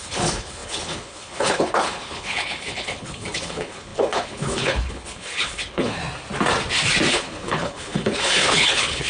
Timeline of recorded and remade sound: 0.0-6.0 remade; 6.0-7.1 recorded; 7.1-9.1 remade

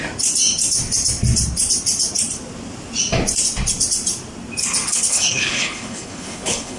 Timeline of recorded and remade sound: 0.0-4.9 recorded; 4.9-6.8 remade

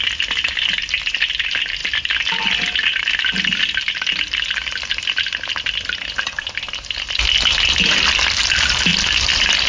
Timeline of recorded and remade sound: 0.0-9.7 recorded

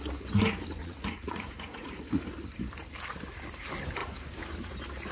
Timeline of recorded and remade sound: 0.0-0.8 recorded; 0.8-2.1 remade; 2.1-5.1 recorded

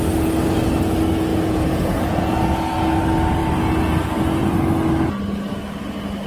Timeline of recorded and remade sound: 0.0-1.3 recorded; 1.3-2.4 remade; 2.4-6.3 recorded

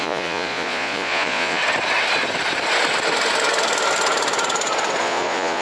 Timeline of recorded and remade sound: 0.0-1.6 remade; 1.6-5.0 recorded; 5.0-5.6 remade

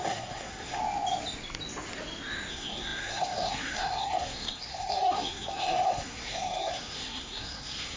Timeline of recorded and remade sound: 0.0-0.8 remade; 0.8-2.5 recorded; 2.5-8.0 remade